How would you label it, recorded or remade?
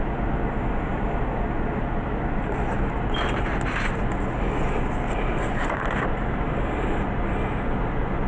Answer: recorded